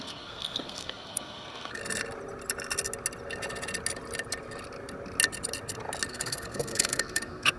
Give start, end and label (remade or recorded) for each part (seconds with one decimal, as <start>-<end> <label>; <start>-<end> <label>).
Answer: 0.0-1.8 remade; 1.8-6.1 recorded; 6.1-7.6 remade